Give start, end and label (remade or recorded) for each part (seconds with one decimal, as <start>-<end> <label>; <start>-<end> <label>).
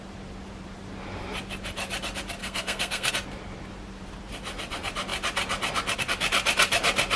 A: 0.0-2.4 recorded; 2.4-3.1 remade; 3.1-7.2 recorded